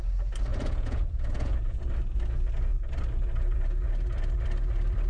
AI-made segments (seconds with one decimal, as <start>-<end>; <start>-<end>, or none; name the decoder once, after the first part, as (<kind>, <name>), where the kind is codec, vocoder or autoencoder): 0.5-1.8 (vocoder, Vocos)